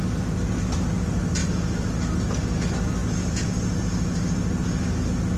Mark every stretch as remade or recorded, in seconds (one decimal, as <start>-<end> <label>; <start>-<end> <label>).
0.0-1.4 recorded; 1.4-2.4 remade; 2.4-3.0 recorded; 3.0-4.5 remade; 4.5-5.4 recorded

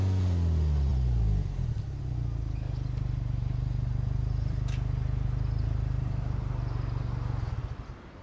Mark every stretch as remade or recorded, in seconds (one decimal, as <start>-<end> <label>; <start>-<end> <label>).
0.0-8.2 recorded

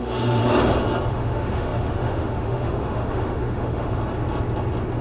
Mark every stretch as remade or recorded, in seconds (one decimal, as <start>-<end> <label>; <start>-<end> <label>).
0.0-0.4 remade; 0.4-1.1 recorded; 1.1-4.0 remade; 4.0-5.0 recorded

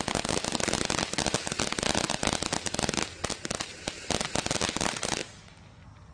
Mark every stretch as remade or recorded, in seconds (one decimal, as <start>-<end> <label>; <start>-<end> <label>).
0.0-6.1 recorded